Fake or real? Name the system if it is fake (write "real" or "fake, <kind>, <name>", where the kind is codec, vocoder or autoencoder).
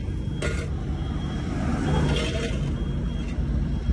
real